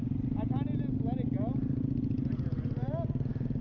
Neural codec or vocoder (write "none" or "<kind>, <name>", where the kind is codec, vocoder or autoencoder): none